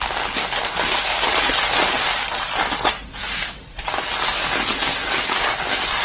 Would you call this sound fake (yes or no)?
no